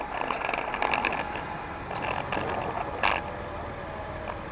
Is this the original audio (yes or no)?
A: yes